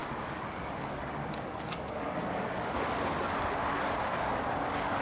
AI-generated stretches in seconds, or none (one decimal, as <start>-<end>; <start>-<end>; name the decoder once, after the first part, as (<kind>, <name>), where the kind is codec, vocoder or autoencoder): 0.0-3.0 (codec, DAC); 3.7-5.0